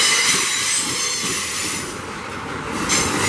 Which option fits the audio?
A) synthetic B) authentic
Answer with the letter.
B